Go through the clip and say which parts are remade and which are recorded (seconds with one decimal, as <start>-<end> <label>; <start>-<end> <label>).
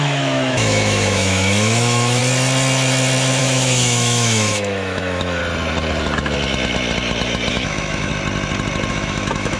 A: 0.0-2.2 remade; 2.2-3.4 recorded; 3.4-5.4 remade; 5.4-7.5 recorded; 7.5-8.1 remade; 8.1-8.9 recorded; 8.9-9.6 remade